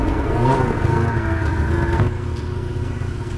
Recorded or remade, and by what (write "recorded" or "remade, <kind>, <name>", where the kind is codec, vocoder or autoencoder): remade, codec, SNAC